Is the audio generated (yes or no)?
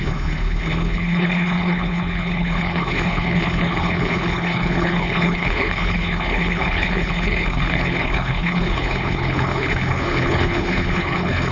yes